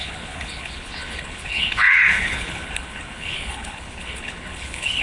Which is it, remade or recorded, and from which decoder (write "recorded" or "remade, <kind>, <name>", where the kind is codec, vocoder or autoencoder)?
remade, codec, HILCodec